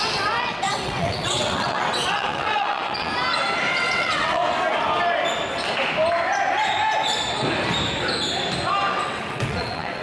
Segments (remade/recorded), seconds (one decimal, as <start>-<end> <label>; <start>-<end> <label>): 0.0-3.1 remade; 3.1-3.7 recorded; 3.7-4.4 remade; 4.4-8.9 recorded; 8.9-10.0 remade